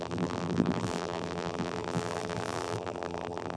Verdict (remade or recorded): remade